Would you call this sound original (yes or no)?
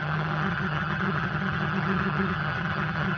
no